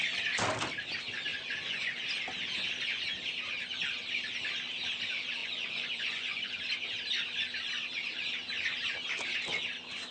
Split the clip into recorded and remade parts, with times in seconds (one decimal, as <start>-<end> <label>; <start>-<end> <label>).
0.0-1.3 recorded; 1.3-2.0 remade; 2.0-5.4 recorded; 5.4-6.5 remade; 6.5-10.1 recorded

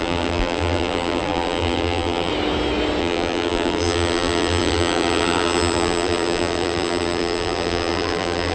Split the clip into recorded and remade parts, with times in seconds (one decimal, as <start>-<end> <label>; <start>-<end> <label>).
0.0-2.3 remade; 2.3-3.0 recorded; 3.0-8.5 remade

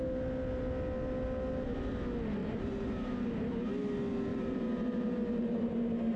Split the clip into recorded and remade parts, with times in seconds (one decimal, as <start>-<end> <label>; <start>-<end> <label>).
0.0-2.4 recorded; 2.4-3.7 remade; 3.7-4.3 recorded; 4.3-6.2 remade

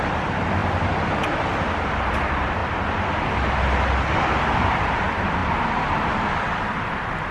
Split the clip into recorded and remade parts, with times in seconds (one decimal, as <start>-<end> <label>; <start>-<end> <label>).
0.0-0.6 remade; 0.6-1.1 recorded; 1.1-2.6 remade; 2.6-4.7 recorded; 4.7-7.3 remade